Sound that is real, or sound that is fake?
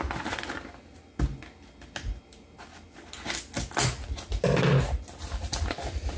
real